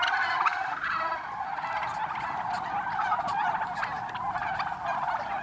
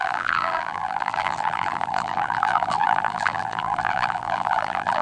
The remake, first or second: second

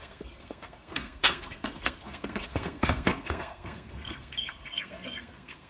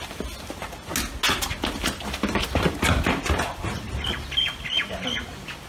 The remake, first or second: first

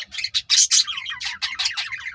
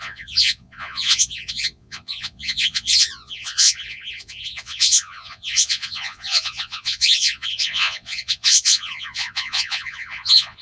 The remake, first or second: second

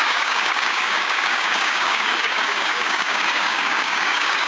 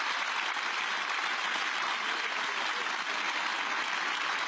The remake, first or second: first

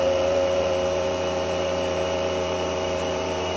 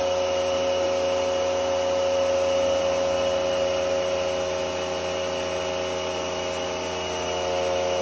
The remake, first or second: first